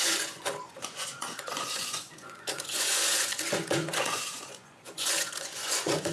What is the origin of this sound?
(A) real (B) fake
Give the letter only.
B